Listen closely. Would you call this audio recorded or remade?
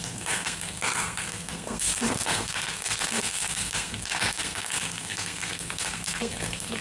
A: remade